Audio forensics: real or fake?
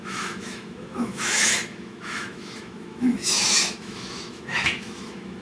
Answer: fake